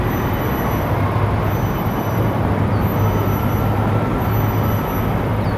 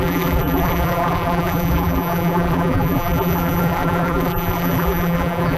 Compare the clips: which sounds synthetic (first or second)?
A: second